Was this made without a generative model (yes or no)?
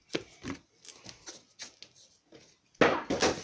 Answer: yes